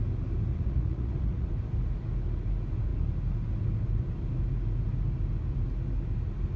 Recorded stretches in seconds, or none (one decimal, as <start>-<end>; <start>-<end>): 0.0-0.5; 1.5-6.6